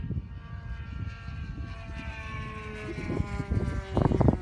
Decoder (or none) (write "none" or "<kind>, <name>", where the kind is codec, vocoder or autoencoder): none